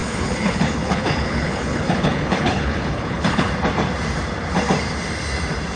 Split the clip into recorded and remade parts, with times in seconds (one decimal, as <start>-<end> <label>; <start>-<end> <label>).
0.0-3.5 remade; 3.5-5.8 recorded